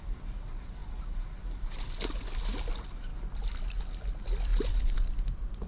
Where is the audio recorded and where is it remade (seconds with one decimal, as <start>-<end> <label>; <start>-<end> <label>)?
0.0-5.7 recorded